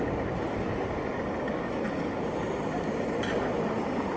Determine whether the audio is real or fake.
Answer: real